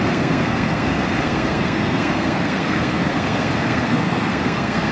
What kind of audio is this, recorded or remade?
remade